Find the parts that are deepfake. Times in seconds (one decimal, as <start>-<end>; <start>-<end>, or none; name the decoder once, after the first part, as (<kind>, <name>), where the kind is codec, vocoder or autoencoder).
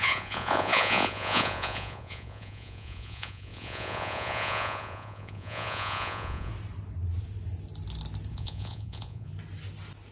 0.0-6.5 (vocoder, Vocos); 8.3-9.3